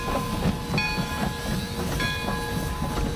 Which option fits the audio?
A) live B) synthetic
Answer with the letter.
A